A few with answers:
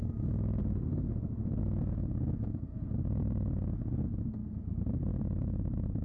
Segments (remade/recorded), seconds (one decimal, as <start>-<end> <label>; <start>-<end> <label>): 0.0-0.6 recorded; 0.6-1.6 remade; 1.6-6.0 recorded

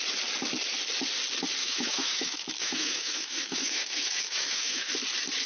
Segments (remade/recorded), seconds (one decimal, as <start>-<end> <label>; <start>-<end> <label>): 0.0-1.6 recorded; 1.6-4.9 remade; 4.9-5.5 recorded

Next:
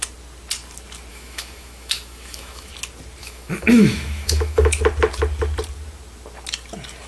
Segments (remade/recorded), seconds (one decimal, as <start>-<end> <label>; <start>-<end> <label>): 0.0-1.1 recorded; 1.1-2.7 remade; 2.7-3.2 recorded; 3.2-4.8 remade; 4.8-7.1 recorded

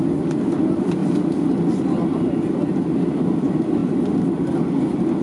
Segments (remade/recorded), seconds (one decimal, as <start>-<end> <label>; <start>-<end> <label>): 0.0-5.2 recorded

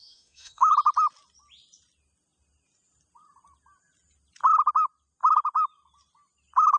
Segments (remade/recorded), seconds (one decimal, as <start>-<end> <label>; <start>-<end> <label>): 0.0-0.7 remade; 0.7-6.8 recorded

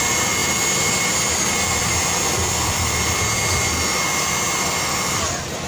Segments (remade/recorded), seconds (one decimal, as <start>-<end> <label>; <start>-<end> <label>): 0.0-5.7 recorded

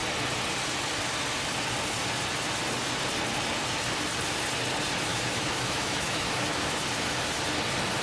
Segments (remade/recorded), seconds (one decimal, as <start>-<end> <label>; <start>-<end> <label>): 0.0-5.1 recorded; 5.1-6.8 remade; 6.8-8.0 recorded

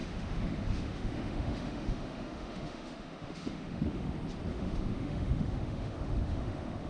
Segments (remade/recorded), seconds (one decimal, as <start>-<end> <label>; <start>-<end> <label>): 0.0-4.1 remade; 4.1-4.5 recorded; 4.5-6.9 remade